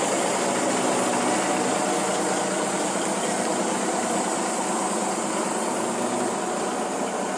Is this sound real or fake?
real